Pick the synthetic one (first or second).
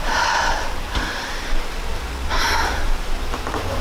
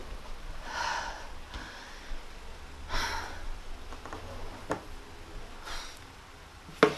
first